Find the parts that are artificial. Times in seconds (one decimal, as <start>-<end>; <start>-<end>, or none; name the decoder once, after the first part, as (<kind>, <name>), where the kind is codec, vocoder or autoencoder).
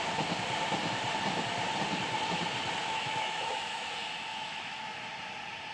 2.8-3.9 (autoencoder, DAC-VAE); 4.3-5.0